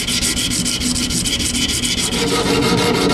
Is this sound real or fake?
real